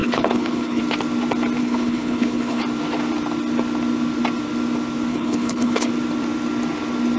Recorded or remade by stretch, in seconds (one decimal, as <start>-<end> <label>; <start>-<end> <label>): 0.0-0.8 remade; 0.8-1.6 recorded; 1.6-2.6 remade; 2.6-5.1 recorded; 5.1-5.9 remade; 5.9-7.2 recorded